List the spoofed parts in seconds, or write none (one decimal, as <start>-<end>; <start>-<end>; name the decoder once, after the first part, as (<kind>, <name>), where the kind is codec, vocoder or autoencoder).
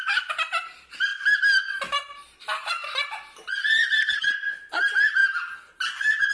none